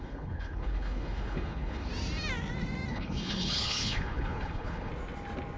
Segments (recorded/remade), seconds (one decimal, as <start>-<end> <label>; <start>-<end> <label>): 0.0-1.9 remade; 1.9-2.9 recorded; 2.9-4.9 remade; 4.9-5.6 recorded